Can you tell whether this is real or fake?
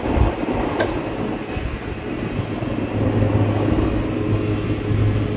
real